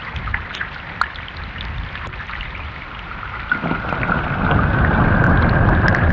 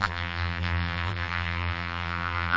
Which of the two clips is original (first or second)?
first